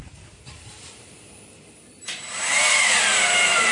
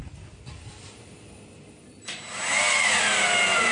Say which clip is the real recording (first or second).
second